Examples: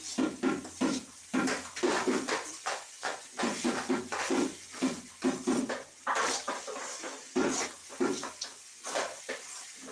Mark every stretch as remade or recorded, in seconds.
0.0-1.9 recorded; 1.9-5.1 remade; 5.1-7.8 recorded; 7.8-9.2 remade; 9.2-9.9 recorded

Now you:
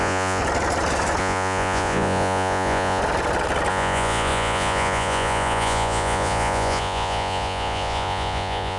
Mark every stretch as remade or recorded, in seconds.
0.0-0.4 remade; 0.4-1.2 recorded; 1.2-3.0 remade; 3.0-3.7 recorded; 3.7-8.8 remade

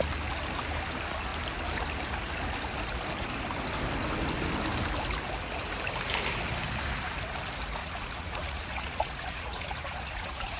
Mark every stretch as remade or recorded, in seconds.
0.0-7.8 recorded; 7.8-10.6 remade

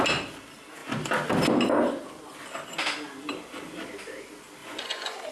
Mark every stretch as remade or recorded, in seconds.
0.0-4.6 recorded; 4.6-5.3 remade

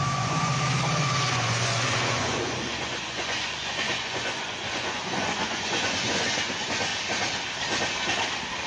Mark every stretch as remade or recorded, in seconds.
0.0-0.5 remade; 0.5-1.0 recorded; 1.0-6.9 remade; 6.9-8.7 recorded